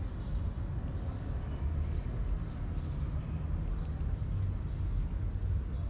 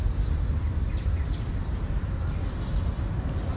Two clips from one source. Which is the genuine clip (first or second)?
first